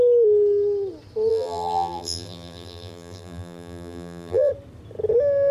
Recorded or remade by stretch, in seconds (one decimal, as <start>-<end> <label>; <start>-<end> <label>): 0.0-1.3 recorded; 1.3-4.5 remade; 4.5-5.5 recorded